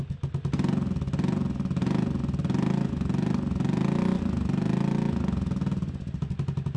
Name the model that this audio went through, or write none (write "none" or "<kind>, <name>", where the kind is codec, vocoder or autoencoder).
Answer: none